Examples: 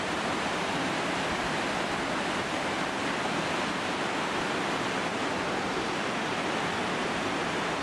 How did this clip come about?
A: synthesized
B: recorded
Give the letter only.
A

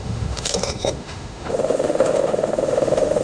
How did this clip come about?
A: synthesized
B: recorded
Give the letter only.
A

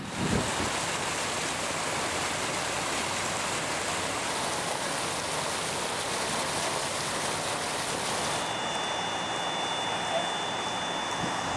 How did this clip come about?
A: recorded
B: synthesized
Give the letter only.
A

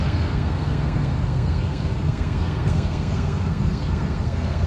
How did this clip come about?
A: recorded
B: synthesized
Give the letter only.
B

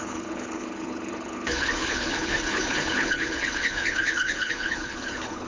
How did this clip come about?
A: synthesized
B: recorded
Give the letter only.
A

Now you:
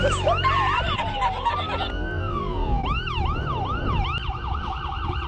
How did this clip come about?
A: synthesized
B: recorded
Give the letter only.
B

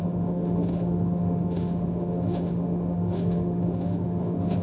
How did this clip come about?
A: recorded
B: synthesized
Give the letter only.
B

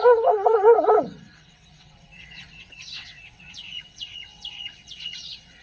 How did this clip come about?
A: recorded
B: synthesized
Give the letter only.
B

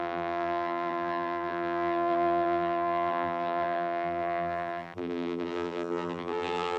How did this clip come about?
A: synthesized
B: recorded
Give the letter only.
A